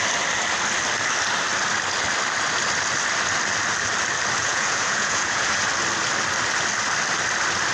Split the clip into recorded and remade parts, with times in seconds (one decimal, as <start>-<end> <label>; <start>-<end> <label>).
0.0-4.4 recorded; 4.4-5.6 remade; 5.6-7.7 recorded

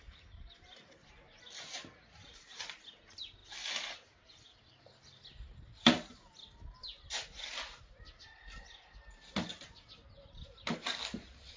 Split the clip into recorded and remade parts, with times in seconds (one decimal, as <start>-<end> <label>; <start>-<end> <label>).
0.0-11.6 recorded

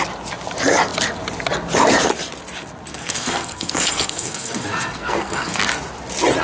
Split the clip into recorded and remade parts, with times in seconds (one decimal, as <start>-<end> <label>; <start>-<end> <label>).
0.0-2.9 recorded; 2.9-5.6 remade; 5.6-6.4 recorded

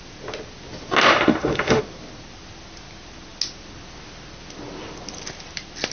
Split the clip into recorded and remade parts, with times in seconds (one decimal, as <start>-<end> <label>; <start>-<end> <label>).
0.0-1.1 recorded; 1.1-1.8 remade; 1.8-5.9 recorded